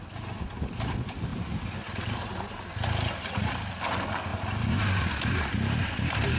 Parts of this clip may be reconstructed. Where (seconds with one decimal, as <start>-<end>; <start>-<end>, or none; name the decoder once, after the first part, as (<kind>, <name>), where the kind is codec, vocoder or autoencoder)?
1.3-2.3 (vocoder, BigVGAN v2); 4.3-6.4